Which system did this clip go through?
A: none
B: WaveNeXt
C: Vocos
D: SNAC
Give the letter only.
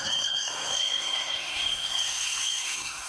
D